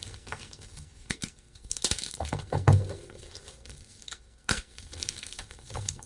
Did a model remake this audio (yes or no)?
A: yes